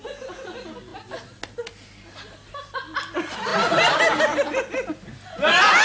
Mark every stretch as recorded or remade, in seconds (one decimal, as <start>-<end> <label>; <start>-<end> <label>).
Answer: 0.0-5.8 recorded